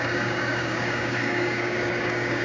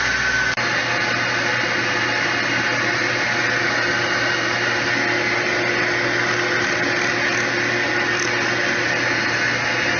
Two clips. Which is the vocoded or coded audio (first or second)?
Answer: first